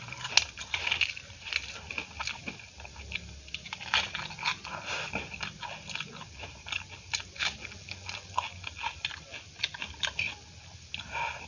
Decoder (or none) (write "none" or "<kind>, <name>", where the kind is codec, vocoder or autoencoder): none